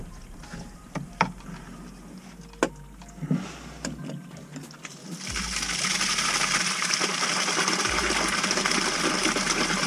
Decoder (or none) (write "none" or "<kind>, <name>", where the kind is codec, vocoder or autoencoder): none